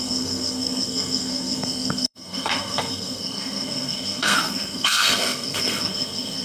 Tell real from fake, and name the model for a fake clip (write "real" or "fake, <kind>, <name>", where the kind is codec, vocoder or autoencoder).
fake, codec, SNAC